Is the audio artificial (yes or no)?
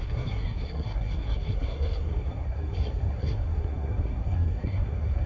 yes